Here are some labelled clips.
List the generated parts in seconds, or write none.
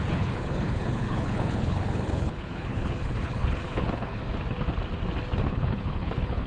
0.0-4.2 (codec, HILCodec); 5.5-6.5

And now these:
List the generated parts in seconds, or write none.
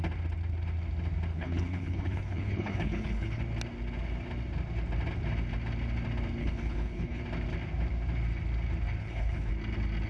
1.3-3.4 (codec, HILCodec); 6.4-7.2; 9.0-9.5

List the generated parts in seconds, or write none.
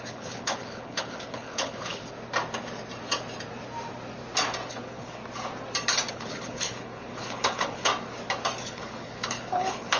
0.0-2.0 (codec, HILCodec); 4.7-5.2; 6.1-7.9; 8.6-10.0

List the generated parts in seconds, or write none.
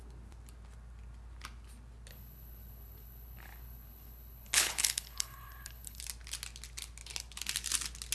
2.1-6.0 (codec, HILCodec)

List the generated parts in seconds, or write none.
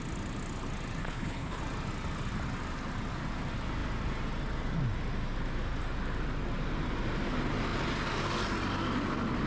1.0-1.6 (codec, HILCodec)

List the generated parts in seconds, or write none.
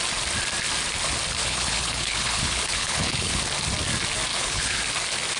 1.4-3.4 (codec, HILCodec); 4.3-4.8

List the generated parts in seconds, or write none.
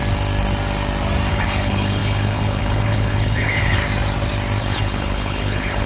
1.3-3.8 (codec, HILCodec); 4.6-5.9